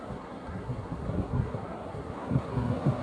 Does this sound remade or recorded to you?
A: remade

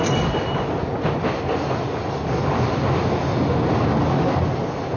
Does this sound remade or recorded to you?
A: recorded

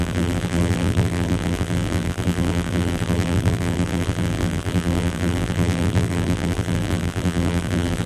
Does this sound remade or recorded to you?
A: remade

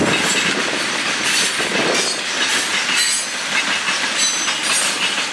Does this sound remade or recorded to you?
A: recorded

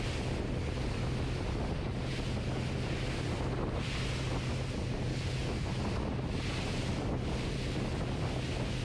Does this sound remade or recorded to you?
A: recorded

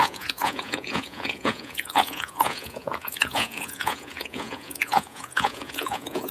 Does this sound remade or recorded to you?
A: remade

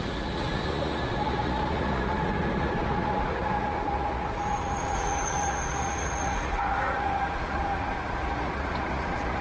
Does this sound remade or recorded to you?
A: remade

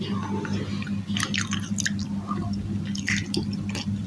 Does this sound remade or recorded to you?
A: recorded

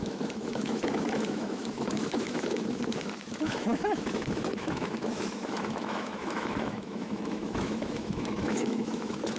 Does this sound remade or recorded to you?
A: remade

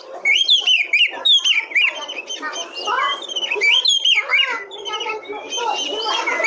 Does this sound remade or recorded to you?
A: recorded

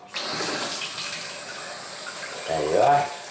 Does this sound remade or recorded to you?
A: remade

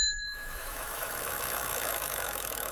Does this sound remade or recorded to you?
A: remade